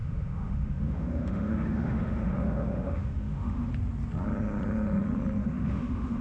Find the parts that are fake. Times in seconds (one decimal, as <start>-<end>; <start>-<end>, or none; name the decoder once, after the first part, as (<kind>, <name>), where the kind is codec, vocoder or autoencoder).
0.0-3.7 (autoencoder, DAC-VAE); 5.4-6.2